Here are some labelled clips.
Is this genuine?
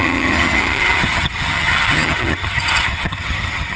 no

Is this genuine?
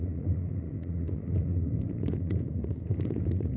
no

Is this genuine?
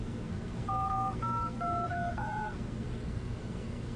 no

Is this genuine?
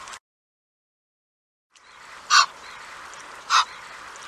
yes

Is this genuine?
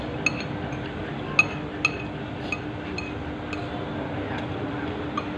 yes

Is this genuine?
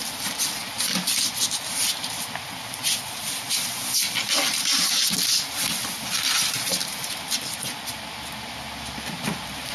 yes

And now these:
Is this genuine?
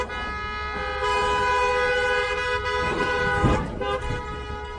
yes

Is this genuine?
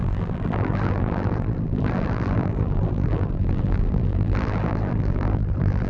no